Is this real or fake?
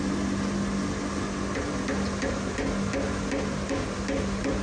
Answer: real